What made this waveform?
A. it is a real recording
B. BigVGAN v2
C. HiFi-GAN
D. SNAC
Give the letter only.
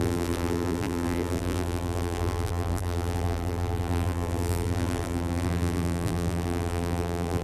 B